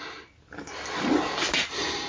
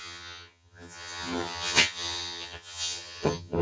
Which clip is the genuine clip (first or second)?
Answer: first